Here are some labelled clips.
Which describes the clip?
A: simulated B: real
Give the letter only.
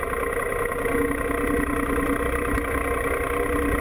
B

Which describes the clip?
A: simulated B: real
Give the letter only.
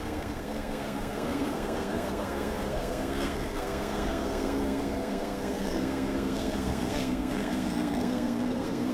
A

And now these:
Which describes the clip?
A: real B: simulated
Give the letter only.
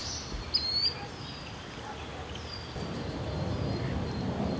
B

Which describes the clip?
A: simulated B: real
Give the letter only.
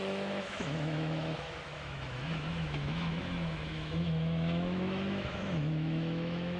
A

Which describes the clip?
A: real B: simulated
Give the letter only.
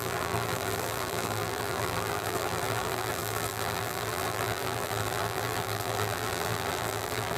B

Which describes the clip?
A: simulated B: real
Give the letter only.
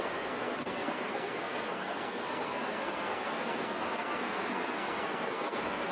A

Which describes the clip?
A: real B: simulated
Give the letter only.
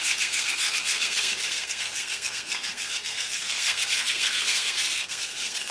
B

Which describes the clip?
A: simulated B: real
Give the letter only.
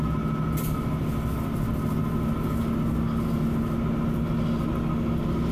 B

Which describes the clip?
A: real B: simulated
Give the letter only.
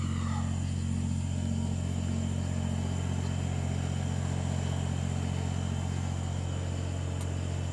A